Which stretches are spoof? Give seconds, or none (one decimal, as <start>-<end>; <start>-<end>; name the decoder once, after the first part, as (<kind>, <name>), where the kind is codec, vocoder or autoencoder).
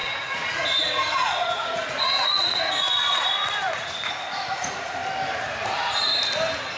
0.0-5.0 (vocoder, Vocos); 5.6-6.1